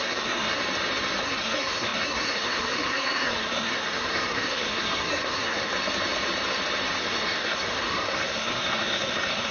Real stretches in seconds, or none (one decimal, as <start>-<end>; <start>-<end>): 0.6-1.2; 5.7-7.0